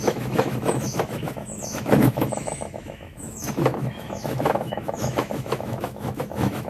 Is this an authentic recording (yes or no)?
no